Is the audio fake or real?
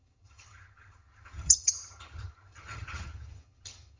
fake